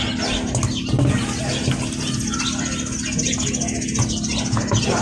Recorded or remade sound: recorded